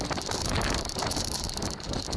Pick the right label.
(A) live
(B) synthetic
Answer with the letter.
B